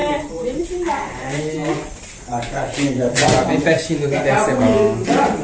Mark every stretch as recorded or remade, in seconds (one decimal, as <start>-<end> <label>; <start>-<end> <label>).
0.0-0.6 remade; 0.6-5.4 recorded